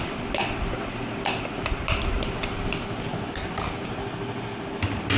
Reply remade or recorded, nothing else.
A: recorded